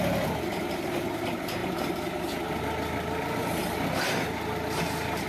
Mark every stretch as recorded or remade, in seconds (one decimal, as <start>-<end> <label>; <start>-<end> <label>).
0.0-5.3 recorded